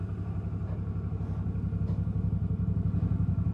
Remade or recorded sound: recorded